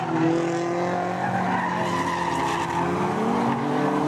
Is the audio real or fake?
real